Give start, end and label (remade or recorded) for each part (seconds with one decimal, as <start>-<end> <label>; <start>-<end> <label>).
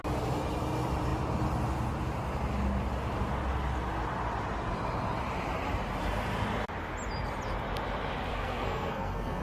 0.0-8.3 recorded; 8.3-9.4 remade